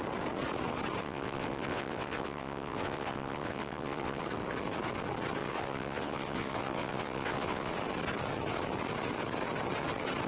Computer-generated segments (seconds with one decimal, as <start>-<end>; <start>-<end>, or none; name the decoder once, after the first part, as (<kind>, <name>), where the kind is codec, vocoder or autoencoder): 1.0-4.2 (vocoder, WaveNeXt); 5.4-7.7